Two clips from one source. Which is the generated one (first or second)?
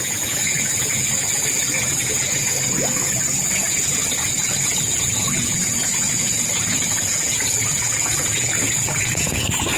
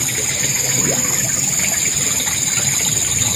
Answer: first